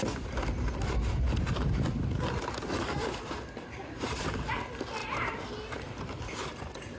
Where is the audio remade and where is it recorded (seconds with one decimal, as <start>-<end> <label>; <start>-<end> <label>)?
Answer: 0.0-7.0 recorded